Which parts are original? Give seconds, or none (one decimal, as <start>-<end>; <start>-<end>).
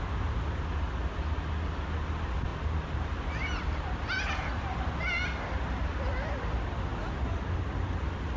0.0-8.4